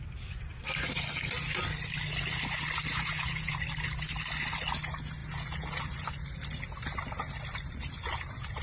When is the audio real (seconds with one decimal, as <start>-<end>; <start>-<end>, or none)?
0.0-2.9; 3.5-5.2; 6.0-8.6